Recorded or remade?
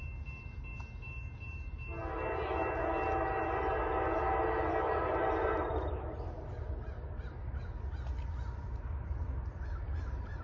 recorded